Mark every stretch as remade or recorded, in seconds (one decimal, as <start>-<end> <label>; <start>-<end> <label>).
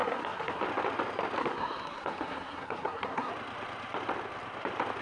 0.0-0.6 remade; 0.6-1.4 recorded; 1.4-3.3 remade; 3.3-5.0 recorded